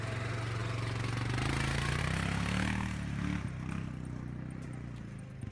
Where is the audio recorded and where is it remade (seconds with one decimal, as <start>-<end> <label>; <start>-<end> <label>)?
0.0-5.5 recorded